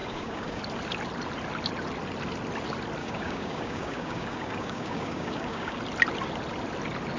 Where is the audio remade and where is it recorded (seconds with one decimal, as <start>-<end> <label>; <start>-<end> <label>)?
0.0-0.6 remade; 0.6-3.0 recorded; 3.0-5.8 remade; 5.8-7.2 recorded